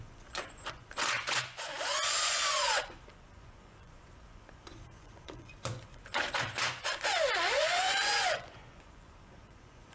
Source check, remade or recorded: remade